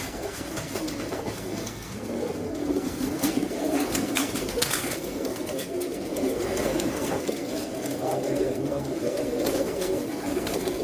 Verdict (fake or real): fake